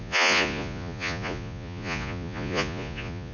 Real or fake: fake